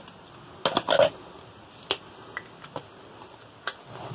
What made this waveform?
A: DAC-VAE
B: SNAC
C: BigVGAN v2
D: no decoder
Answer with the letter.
D